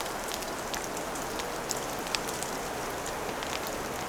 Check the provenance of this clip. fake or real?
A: real